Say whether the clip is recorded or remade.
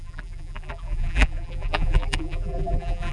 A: remade